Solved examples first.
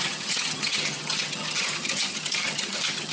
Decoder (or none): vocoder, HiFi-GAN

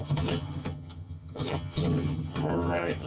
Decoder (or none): vocoder, HiFi-GAN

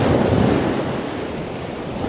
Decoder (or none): none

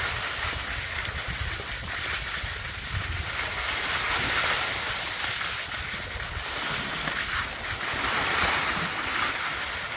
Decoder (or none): none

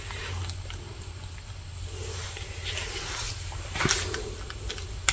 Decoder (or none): none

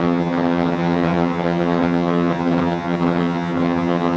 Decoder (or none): vocoder, HiFi-GAN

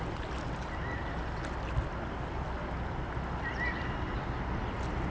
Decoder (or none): none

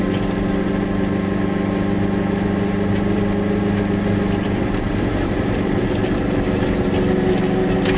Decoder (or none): none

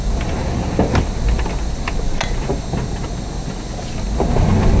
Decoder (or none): none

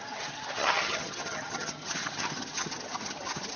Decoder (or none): vocoder, HiFi-GAN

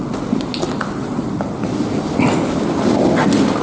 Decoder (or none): none